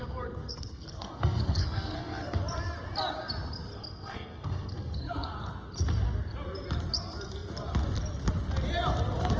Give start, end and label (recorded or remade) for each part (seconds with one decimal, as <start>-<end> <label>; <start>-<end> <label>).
0.0-0.4 recorded; 0.4-2.4 remade; 2.4-3.9 recorded; 3.9-5.3 remade; 5.3-9.4 recorded